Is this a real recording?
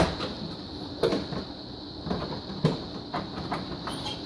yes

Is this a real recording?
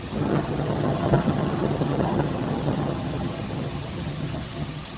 no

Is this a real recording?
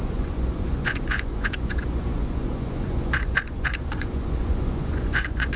no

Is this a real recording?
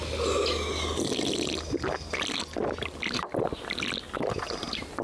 yes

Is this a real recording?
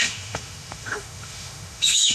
no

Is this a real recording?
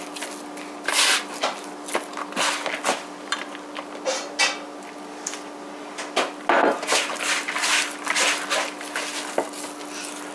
yes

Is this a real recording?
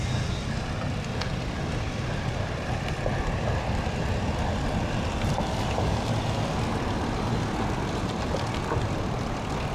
yes